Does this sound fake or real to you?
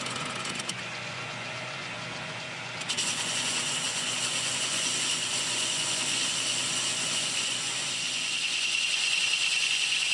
fake